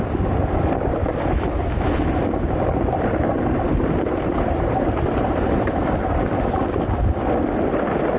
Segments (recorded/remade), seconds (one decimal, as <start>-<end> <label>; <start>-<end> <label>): 0.0-3.3 recorded; 3.3-6.3 remade; 6.3-8.2 recorded